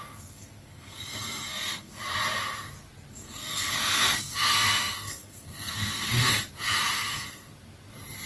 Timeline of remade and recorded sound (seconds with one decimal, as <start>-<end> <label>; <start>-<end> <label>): 0.0-2.0 remade; 2.0-3.1 recorded; 3.1-6.3 remade; 6.3-6.9 recorded; 6.9-7.5 remade; 7.5-8.3 recorded